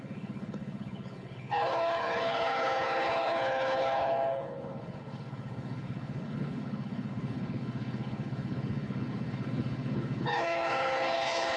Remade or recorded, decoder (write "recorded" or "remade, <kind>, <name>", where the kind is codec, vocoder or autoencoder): remade, codec, HILCodec